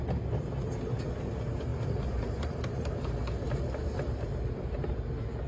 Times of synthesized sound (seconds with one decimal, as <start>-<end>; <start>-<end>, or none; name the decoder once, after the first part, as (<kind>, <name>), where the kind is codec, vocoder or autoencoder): 1.7-3.0 (vocoder, BigVGAN v2); 3.8-4.9